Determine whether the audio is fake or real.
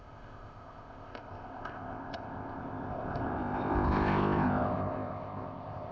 fake